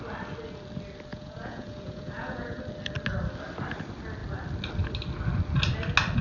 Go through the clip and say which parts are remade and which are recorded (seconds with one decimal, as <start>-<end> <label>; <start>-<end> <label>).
0.0-1.1 recorded; 1.1-2.6 remade; 2.6-6.2 recorded

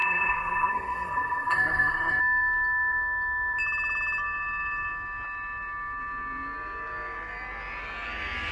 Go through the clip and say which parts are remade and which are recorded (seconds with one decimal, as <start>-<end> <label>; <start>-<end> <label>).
0.0-2.2 remade; 2.2-8.5 recorded

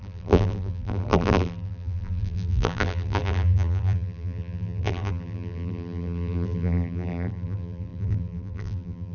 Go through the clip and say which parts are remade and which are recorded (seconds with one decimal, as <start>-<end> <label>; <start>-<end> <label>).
0.0-9.1 remade